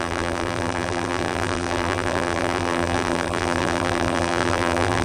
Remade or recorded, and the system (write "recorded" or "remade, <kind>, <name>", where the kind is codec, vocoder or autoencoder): remade, vocoder, BigVGAN v2